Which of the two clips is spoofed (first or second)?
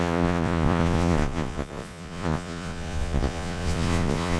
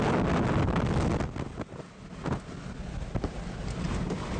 first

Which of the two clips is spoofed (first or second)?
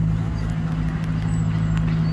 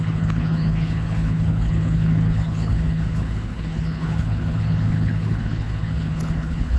second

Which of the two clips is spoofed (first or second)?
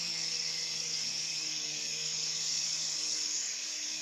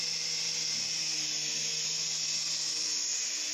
first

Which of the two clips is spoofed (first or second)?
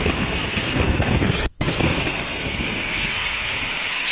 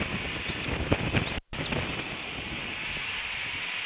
first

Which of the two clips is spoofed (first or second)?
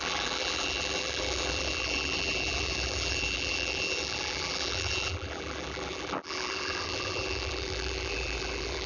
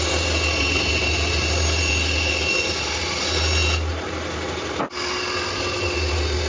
first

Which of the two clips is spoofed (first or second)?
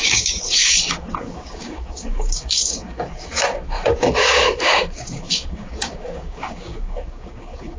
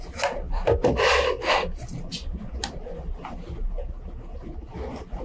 first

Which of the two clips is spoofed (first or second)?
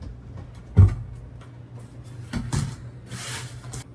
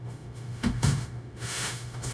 second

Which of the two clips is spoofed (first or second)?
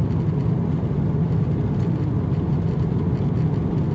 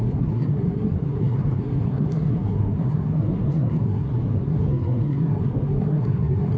second